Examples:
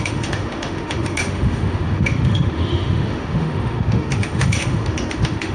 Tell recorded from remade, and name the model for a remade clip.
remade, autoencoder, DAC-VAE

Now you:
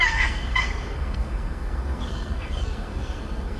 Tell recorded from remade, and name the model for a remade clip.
remade, codec, SNAC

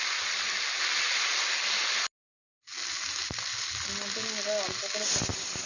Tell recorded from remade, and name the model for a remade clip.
recorded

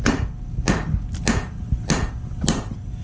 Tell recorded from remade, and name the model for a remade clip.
recorded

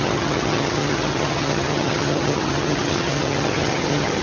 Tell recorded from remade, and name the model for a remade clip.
remade, vocoder, HiFi-GAN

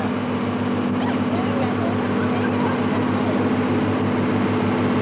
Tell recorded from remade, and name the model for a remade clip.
recorded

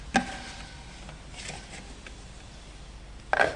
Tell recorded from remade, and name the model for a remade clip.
recorded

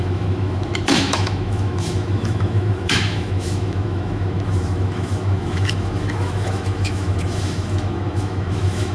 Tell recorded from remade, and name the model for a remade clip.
remade, autoencoder, DAC-VAE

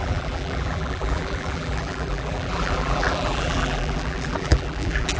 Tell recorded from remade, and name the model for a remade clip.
remade, vocoder, BigVGAN v2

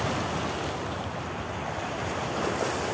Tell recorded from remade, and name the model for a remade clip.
recorded